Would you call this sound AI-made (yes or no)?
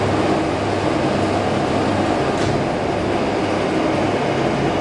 no